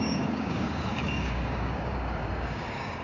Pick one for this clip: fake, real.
fake